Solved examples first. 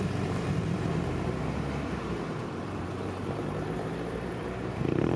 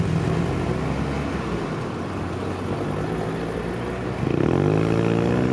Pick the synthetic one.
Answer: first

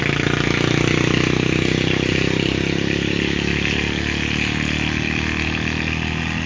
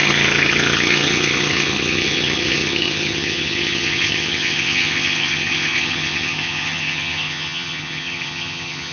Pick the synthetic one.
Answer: second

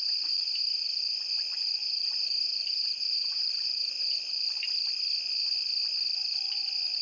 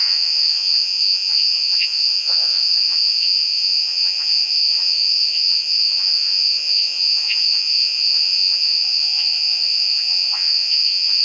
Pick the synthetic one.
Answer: second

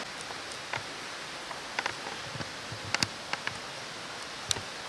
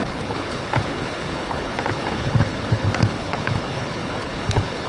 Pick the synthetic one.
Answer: second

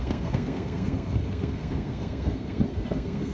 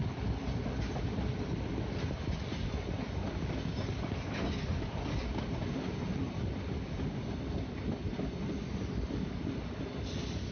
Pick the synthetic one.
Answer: first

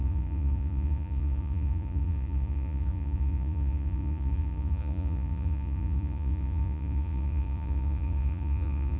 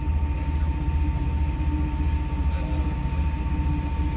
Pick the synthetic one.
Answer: first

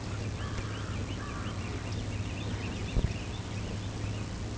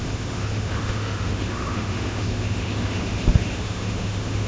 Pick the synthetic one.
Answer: second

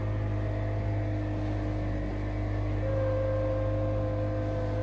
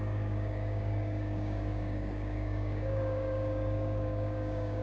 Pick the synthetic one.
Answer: second